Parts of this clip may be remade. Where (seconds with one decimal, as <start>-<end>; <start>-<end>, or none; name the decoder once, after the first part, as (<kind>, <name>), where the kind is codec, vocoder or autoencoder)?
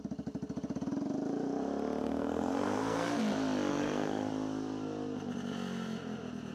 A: 2.0-3.2 (codec, SNAC); 3.7-4.3